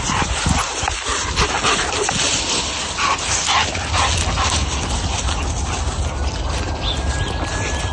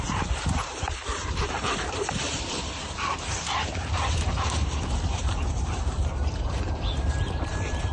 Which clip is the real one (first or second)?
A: first